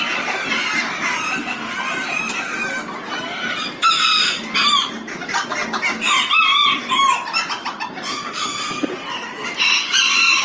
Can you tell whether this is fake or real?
real